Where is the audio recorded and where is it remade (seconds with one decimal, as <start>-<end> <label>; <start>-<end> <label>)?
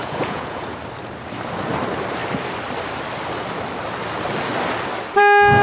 0.0-0.7 remade; 0.7-5.6 recorded